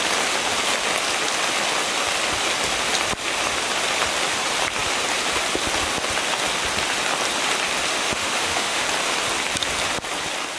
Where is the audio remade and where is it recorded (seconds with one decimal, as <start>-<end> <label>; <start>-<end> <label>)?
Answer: 0.0-7.9 recorded; 7.9-8.8 remade; 8.8-10.6 recorded